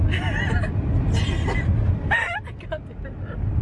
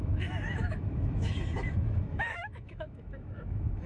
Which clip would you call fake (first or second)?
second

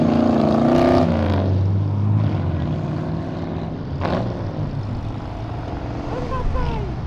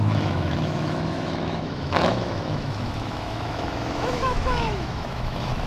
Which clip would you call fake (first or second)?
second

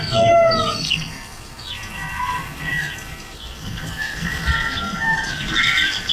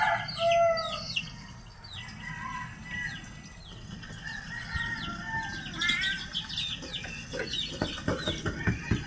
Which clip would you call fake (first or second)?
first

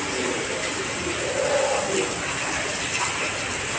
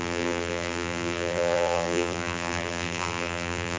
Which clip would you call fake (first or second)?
second